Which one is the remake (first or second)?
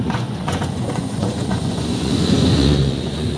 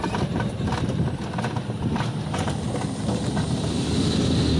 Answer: first